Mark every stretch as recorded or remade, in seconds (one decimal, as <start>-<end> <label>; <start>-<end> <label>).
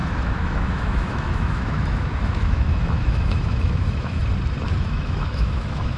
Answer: 0.0-4.2 remade; 4.2-4.8 recorded; 4.8-6.0 remade